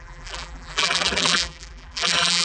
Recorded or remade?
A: remade